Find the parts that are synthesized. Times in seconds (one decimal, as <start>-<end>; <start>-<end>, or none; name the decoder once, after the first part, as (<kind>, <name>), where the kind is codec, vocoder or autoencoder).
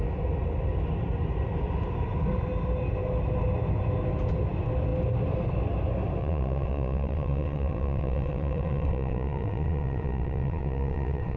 6.2-11.4 (vocoder, WaveNeXt)